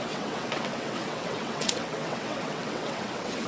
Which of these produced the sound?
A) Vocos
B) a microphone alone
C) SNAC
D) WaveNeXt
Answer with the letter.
D